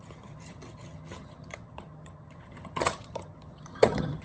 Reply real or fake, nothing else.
fake